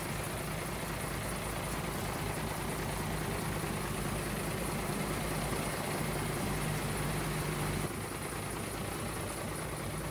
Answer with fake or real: real